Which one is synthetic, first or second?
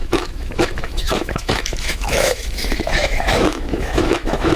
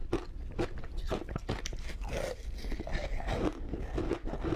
first